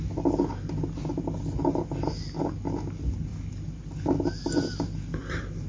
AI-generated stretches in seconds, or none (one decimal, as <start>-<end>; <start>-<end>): none